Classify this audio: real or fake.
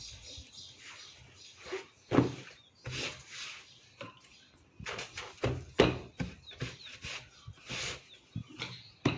real